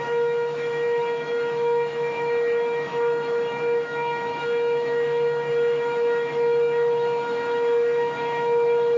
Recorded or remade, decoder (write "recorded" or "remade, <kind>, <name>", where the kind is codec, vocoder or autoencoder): remade, autoencoder, DAC-VAE